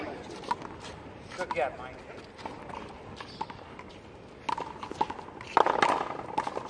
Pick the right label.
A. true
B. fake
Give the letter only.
A